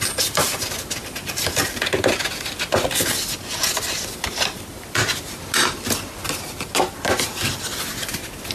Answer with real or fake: real